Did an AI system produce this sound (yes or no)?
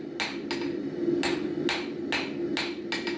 no